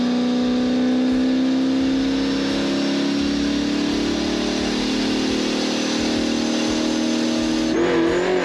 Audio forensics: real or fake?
real